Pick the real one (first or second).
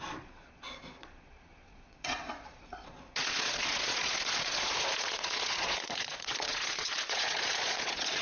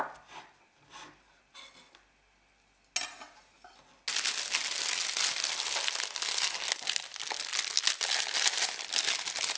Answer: second